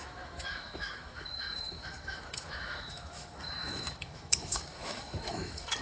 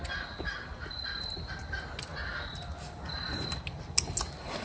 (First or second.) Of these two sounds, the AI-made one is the first